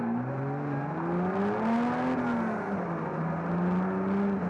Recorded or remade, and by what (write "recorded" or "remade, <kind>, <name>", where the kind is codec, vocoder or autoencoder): recorded